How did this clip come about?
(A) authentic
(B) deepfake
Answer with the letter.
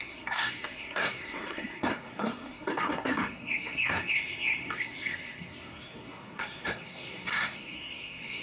B